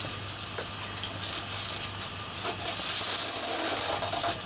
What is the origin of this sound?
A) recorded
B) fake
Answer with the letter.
A